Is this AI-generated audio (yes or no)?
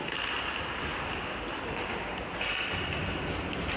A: no